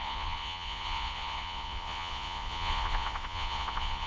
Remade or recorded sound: remade